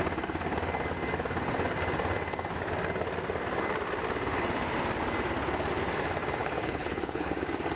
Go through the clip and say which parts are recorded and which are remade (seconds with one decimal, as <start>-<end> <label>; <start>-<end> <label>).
0.0-6.4 recorded; 6.4-7.3 remade; 7.3-7.8 recorded